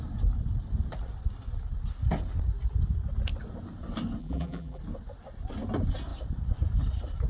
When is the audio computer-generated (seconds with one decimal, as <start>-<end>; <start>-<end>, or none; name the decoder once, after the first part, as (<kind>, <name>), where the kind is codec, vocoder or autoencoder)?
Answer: 4.2-4.8 (vocoder, BigVGAN v2)